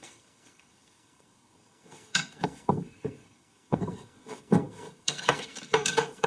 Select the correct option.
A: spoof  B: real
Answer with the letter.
A